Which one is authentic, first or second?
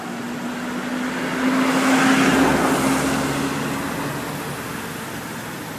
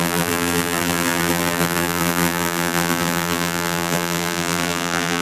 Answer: first